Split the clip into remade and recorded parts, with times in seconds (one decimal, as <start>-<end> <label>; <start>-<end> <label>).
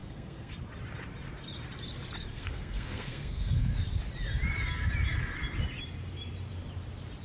0.0-0.5 remade; 0.5-2.3 recorded; 2.3-3.7 remade; 3.7-7.2 recorded